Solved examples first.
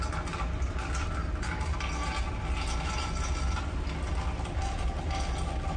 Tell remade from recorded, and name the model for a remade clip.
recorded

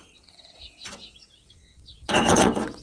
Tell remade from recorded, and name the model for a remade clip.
remade, vocoder, WaveNeXt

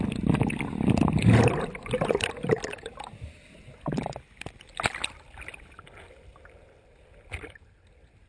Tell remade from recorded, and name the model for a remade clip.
recorded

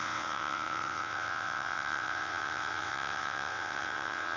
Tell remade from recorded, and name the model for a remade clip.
remade, vocoder, WaveNeXt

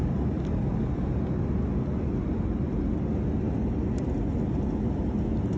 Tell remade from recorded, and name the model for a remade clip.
recorded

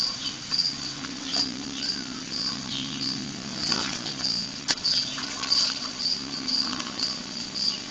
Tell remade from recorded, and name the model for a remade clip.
remade, vocoder, WaveNeXt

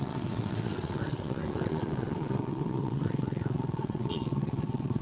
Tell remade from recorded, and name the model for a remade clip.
remade, vocoder, WaveNeXt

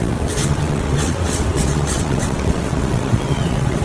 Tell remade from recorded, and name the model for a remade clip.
remade, vocoder, WaveNeXt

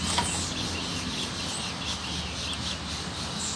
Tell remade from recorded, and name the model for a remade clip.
recorded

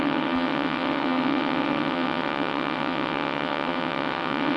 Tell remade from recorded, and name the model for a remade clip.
remade, vocoder, WaveNeXt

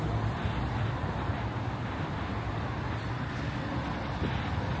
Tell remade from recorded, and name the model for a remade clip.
recorded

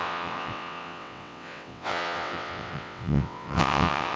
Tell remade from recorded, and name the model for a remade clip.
remade, vocoder, WaveNeXt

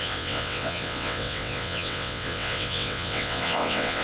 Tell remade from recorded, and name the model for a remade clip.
remade, vocoder, WaveNeXt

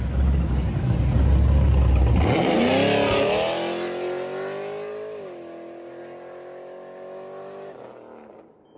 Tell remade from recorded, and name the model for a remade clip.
recorded